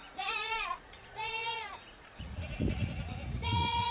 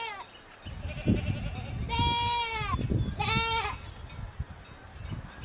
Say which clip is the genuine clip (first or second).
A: second